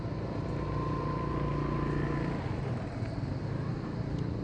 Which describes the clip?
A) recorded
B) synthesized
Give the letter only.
A